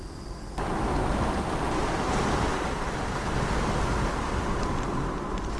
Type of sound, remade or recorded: recorded